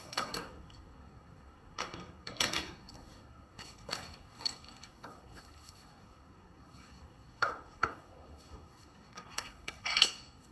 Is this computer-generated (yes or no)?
yes